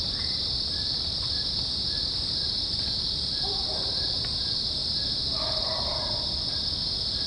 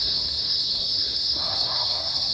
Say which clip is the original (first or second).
first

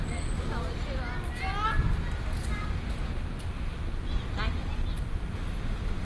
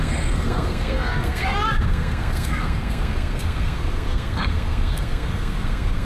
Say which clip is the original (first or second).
first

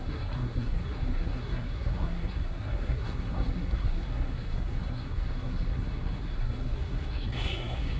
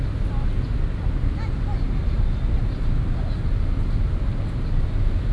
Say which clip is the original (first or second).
second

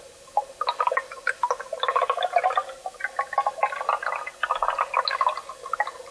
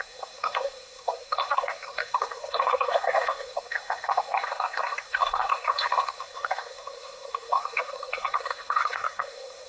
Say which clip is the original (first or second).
first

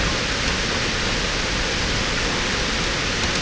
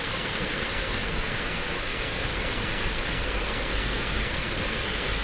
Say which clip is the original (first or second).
first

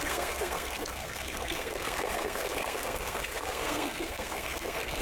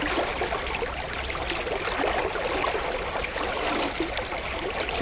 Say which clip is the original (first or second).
second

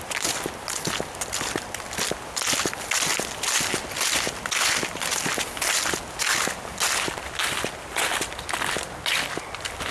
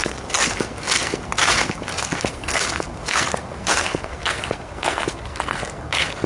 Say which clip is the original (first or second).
first